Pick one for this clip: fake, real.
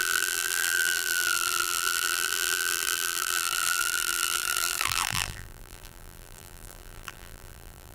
fake